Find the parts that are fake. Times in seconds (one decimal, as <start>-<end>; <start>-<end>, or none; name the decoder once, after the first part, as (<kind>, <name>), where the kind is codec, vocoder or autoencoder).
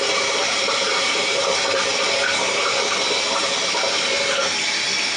0.4-1.5 (vocoder, BigVGAN v2); 1.9-2.8